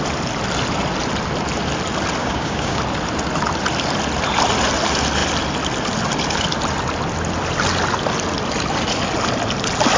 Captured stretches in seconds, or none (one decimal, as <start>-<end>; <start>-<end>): 0.0-2.2; 2.8-10.0